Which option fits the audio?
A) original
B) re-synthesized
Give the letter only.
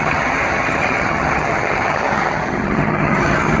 B